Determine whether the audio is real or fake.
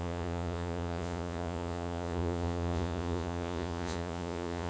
fake